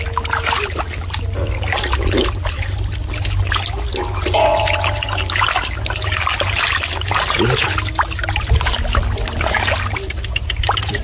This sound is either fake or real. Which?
real